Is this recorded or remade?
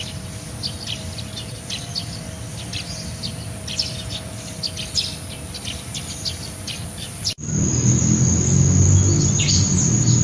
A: recorded